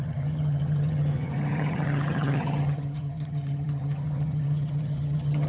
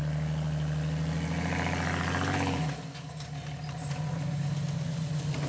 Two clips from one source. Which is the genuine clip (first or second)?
second